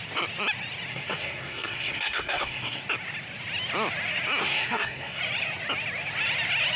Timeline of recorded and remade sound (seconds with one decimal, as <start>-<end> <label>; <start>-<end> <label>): 0.0-0.9 recorded; 0.9-2.8 remade; 2.8-4.4 recorded; 4.4-5.2 remade; 5.2-6.8 recorded